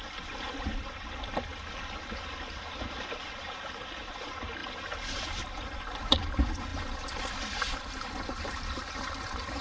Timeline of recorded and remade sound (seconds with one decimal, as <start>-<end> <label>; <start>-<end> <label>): 0.0-1.5 remade; 1.5-2.9 recorded; 2.9-4.6 remade; 4.6-5.1 recorded; 5.1-9.6 remade